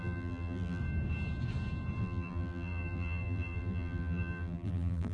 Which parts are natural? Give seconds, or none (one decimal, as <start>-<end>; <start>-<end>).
0.8-2.0